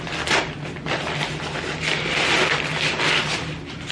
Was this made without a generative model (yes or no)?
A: yes